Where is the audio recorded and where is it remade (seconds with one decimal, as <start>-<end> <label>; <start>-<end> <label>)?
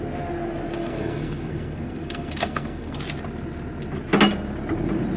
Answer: 0.0-0.7 recorded; 0.7-3.0 remade; 3.0-5.2 recorded